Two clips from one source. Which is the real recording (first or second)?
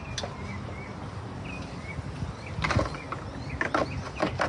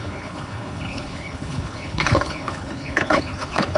first